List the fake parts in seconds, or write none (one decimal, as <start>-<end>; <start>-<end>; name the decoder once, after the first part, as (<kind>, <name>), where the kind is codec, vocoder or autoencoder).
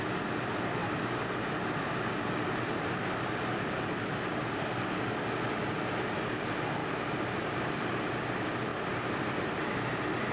6.8-7.9 (vocoder, BigVGAN v2)